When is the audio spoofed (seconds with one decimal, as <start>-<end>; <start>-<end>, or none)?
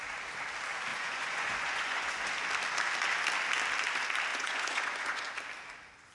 0.9-2.3; 4.3-5.3